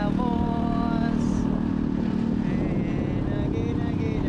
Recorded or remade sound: recorded